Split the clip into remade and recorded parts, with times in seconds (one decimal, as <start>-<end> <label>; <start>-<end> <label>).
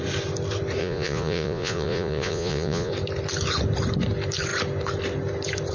0.0-0.8 recorded; 0.8-2.9 remade; 2.9-5.7 recorded